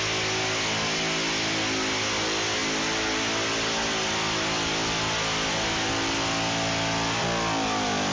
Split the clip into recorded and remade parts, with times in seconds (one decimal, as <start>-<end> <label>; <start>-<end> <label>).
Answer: 0.0-8.1 recorded